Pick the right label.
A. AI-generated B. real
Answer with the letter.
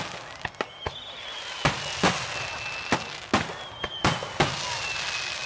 B